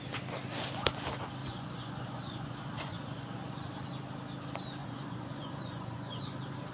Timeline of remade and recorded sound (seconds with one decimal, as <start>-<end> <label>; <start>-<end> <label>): 0.0-1.4 recorded; 1.4-3.6 remade; 3.6-4.8 recorded; 4.8-6.2 remade; 6.2-6.7 recorded